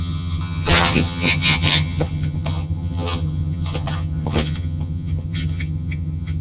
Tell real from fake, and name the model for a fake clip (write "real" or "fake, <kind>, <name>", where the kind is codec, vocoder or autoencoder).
fake, vocoder, HiFi-GAN